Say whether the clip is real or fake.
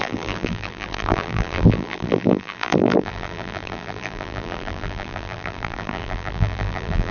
fake